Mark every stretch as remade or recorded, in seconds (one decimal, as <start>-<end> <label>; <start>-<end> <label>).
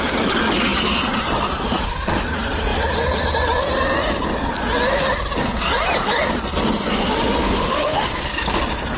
0.0-7.4 recorded; 7.4-8.1 remade; 8.1-9.0 recorded